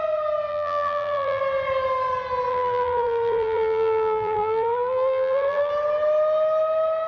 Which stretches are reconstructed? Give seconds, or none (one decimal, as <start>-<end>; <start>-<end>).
0.5-1.4; 2.5-5.7